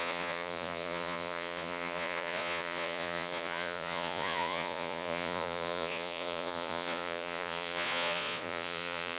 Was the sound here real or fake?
fake